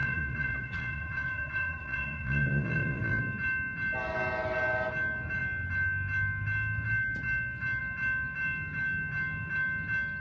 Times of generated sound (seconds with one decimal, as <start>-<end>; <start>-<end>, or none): 0.0-3.2